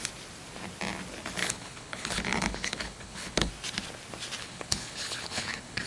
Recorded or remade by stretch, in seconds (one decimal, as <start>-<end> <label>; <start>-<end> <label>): 0.0-1.4 recorded; 1.4-3.5 remade; 3.5-4.4 recorded; 4.4-5.9 remade